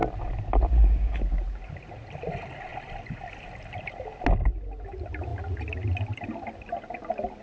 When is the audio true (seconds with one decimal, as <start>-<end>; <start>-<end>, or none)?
0.0-7.4